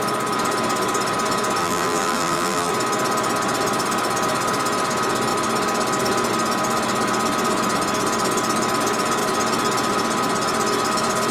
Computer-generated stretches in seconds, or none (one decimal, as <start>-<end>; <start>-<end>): 1.6-2.7